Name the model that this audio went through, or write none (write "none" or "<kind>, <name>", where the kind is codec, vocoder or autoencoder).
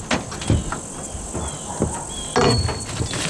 none